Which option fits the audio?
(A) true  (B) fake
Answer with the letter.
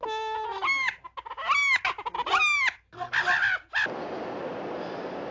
A